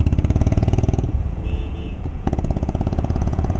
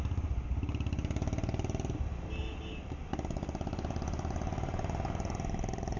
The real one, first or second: second